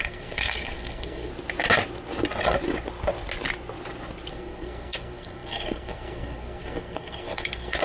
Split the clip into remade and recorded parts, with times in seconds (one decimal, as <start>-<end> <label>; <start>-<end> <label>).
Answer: 0.0-1.3 remade; 1.3-4.3 recorded; 4.3-7.8 remade